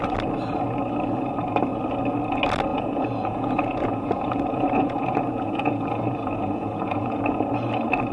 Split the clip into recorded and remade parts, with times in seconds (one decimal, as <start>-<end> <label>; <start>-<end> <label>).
0.0-2.7 recorded; 2.7-7.5 remade; 7.5-8.1 recorded

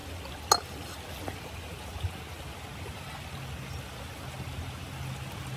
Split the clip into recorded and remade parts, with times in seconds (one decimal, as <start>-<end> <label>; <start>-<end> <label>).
0.0-5.6 recorded

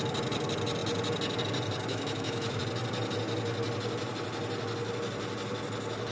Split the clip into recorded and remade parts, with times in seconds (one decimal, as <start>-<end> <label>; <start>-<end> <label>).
0.0-1.9 recorded; 1.9-2.6 remade; 2.6-6.1 recorded

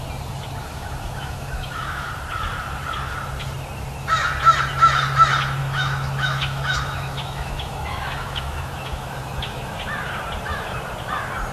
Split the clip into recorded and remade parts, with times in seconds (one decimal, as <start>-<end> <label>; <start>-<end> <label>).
0.0-0.6 recorded; 0.6-2.1 remade; 2.1-5.6 recorded; 5.6-9.8 remade; 9.8-11.5 recorded

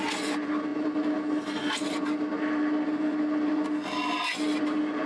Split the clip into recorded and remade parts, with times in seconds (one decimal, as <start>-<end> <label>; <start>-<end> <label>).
0.0-5.1 recorded

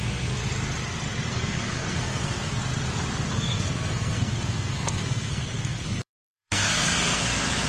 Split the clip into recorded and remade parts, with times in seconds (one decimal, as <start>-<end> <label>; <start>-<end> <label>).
0.0-0.4 remade; 0.4-1.3 recorded; 1.3-2.6 remade; 2.6-3.3 recorded; 3.3-7.7 remade

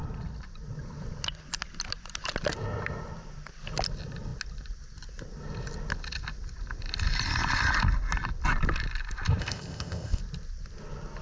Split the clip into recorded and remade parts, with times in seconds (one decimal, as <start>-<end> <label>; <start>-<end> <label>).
0.0-9.4 recorded; 9.4-10.2 remade; 10.2-11.2 recorded